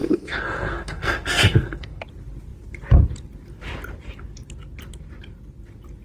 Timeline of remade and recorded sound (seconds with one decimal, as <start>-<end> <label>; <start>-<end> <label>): 0.0-2.0 remade; 2.0-6.0 recorded